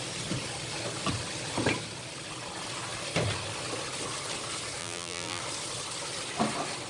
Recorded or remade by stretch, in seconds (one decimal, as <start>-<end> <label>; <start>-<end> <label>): 0.0-4.8 recorded; 4.8-5.4 remade; 5.4-6.9 recorded